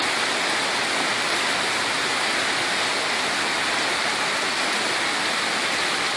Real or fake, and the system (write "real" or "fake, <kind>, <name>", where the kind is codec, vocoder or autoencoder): real